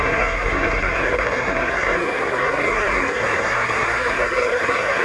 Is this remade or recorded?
remade